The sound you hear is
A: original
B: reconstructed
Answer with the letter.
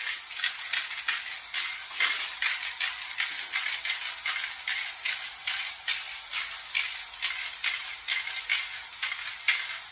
A